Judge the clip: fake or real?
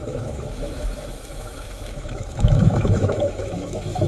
fake